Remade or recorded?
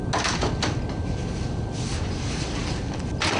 recorded